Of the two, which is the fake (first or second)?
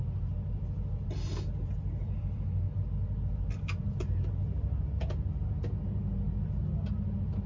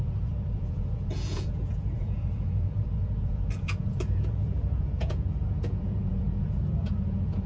second